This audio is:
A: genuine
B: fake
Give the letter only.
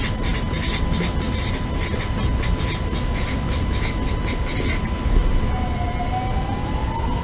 A